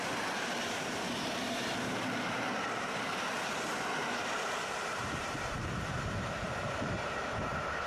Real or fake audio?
fake